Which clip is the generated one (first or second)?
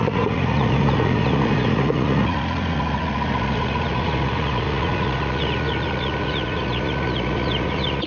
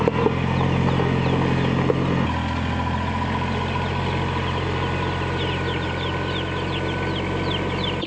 first